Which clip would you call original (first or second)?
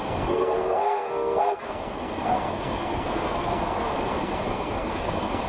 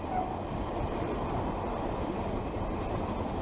second